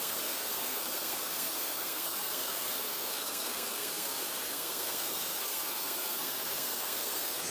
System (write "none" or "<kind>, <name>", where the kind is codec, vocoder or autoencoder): codec, SNAC